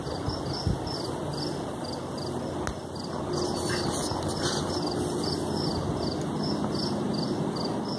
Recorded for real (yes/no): yes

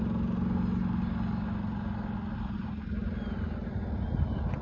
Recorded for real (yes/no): yes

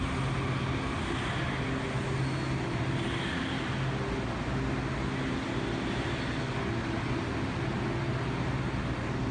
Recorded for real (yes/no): yes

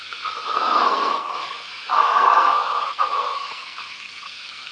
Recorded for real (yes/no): no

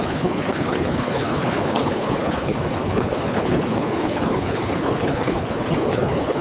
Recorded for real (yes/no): no